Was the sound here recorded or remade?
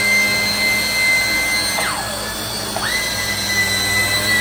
recorded